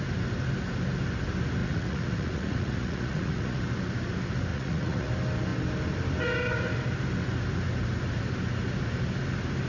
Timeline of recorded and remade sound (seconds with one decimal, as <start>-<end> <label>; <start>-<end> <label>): 0.0-1.6 recorded; 1.6-3.6 remade; 3.6-4.5 recorded; 4.5-5.1 remade; 5.1-9.7 recorded